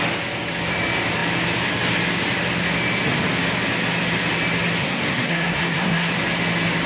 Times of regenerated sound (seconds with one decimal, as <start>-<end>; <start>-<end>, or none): 4.8-6.1